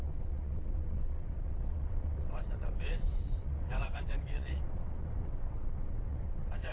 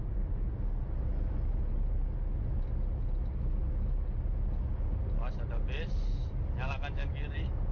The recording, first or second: second